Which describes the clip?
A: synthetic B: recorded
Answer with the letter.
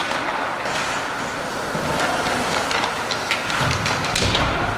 B